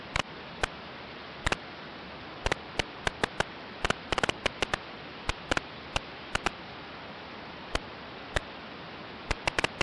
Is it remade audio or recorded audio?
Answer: recorded